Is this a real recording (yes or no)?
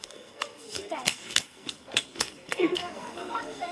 no